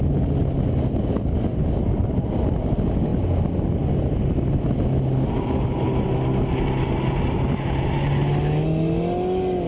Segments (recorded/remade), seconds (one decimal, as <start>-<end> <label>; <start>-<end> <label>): 0.0-9.7 recorded